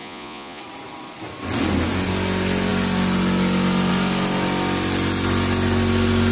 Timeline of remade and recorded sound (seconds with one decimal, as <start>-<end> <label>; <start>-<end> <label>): 0.0-0.6 remade; 0.6-6.3 recorded